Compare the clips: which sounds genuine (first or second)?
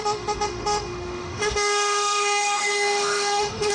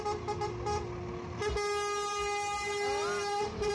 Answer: second